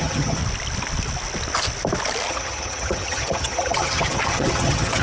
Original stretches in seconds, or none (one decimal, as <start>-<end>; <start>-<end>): 0.4-2.3